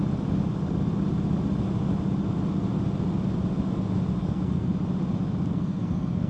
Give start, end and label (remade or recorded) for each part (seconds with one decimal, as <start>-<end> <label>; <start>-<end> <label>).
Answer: 0.0-4.2 recorded; 4.2-4.7 remade; 4.7-5.5 recorded; 5.5-6.3 remade